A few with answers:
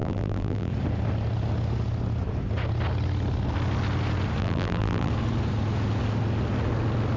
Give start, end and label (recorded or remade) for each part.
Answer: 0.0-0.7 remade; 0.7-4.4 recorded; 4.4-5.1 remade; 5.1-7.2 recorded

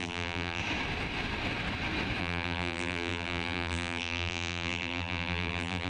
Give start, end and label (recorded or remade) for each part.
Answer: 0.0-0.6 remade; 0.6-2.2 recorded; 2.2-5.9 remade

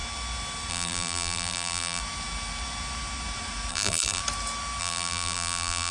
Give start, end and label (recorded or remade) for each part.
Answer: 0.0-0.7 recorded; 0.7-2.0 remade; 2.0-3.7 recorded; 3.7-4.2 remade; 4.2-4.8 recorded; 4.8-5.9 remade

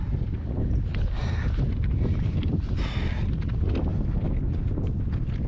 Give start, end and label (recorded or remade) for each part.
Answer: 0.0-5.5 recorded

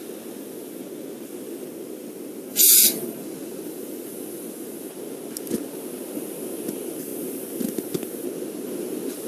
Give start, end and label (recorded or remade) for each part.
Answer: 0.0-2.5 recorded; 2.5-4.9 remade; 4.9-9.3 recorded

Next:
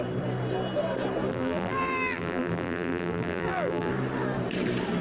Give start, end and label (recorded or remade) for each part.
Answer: 0.0-1.3 recorded; 1.3-3.9 remade; 3.9-5.0 recorded

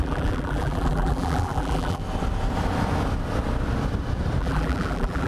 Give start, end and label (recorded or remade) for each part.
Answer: 0.0-2.0 remade; 2.0-4.4 recorded; 4.4-5.3 remade